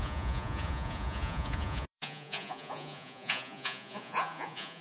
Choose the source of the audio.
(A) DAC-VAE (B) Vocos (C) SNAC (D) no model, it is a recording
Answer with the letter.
B